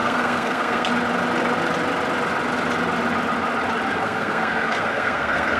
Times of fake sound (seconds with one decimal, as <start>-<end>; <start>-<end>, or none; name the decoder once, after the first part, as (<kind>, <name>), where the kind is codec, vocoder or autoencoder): 0.0-0.9 (codec, SNAC); 4.0-5.6